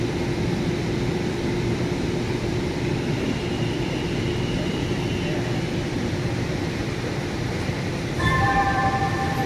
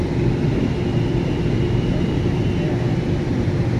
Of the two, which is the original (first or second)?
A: second